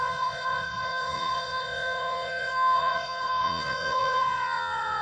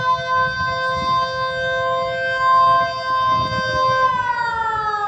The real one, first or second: second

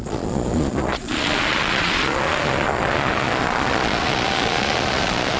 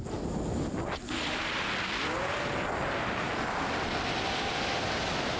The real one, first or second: second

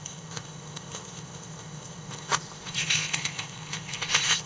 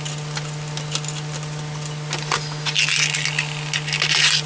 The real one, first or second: second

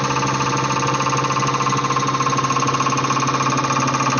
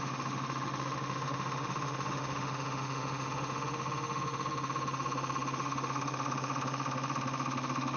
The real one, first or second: first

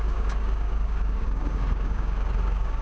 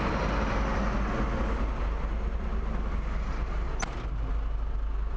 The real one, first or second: second